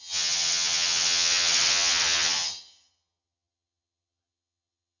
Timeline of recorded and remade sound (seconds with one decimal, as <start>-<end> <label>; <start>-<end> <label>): 0.0-5.0 remade